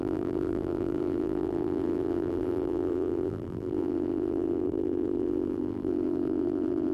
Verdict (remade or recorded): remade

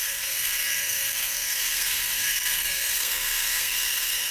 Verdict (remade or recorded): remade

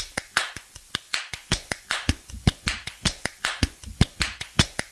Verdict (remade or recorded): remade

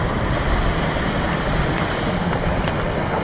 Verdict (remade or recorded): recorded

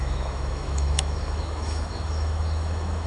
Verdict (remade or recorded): remade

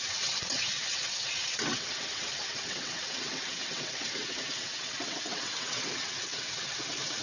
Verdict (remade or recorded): remade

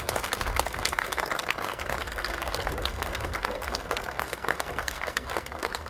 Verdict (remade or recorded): remade